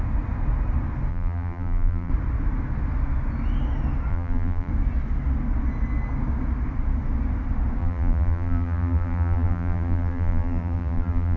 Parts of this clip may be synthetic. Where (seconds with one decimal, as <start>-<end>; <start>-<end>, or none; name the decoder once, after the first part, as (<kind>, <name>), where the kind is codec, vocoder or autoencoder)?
1.1-2.1 (vocoder, BigVGAN v2); 4.1-4.7; 7.8-11.4